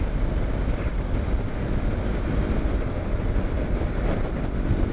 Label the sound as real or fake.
real